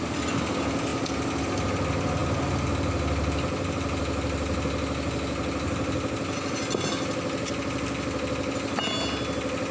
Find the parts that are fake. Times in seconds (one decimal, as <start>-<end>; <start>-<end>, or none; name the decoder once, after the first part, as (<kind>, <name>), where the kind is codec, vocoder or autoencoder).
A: none

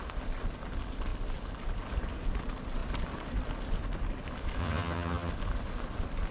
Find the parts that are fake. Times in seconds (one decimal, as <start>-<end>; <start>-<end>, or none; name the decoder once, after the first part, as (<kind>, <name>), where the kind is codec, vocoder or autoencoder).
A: 4.6-5.3 (vocoder, HiFi-GAN)